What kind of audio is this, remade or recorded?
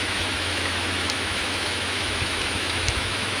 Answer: remade